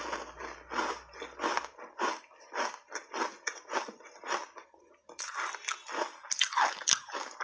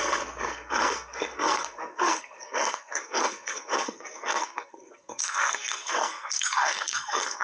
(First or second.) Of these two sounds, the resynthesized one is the second